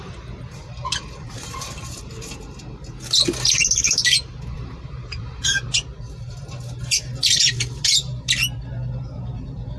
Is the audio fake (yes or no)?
yes